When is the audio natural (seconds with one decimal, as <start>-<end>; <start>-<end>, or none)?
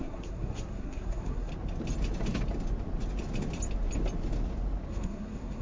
1.5-4.9